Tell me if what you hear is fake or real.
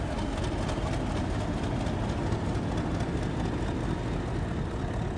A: real